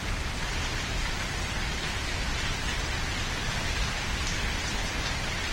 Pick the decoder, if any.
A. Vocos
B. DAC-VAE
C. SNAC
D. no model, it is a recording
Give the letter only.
D